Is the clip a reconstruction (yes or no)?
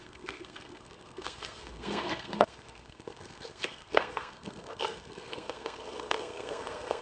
yes